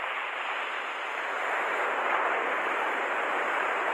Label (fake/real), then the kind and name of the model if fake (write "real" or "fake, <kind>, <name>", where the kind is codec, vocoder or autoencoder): fake, vocoder, BigVGAN v2